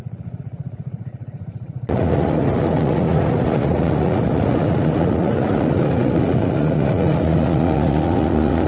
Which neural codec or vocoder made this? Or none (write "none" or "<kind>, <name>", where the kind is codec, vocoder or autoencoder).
vocoder, Vocos